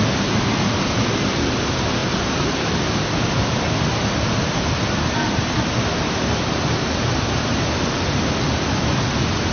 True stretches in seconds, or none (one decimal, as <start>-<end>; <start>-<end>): 0.0-2.0; 2.6-9.5